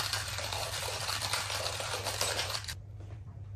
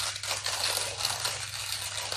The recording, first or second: second